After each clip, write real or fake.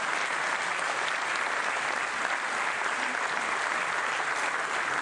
real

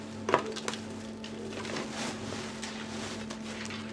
real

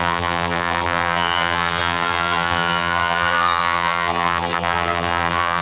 fake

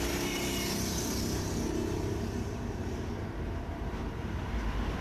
fake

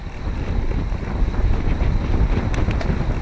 real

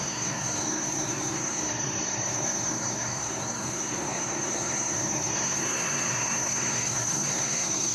fake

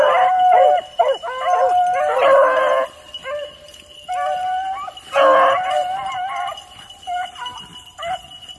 real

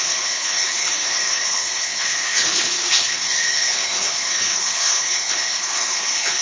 fake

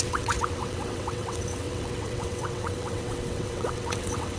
fake